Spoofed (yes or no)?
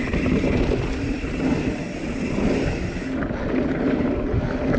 no